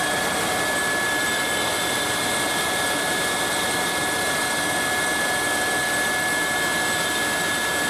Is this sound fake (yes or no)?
no